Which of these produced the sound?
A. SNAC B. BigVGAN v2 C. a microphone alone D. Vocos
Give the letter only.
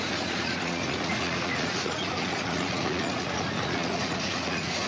D